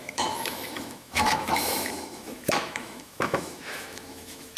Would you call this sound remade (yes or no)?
yes